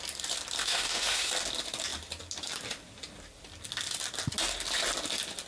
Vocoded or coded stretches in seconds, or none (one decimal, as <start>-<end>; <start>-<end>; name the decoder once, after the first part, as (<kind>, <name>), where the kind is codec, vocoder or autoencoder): 0.6-1.3 (autoencoder, DAC-VAE)